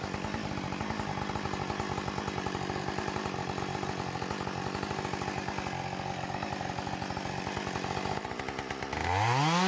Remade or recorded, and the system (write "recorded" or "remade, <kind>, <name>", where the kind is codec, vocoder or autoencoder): recorded